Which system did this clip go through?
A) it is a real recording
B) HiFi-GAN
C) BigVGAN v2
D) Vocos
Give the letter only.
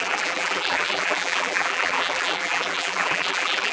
C